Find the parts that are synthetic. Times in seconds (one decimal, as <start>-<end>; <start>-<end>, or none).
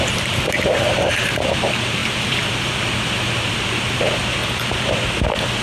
0.0-4.4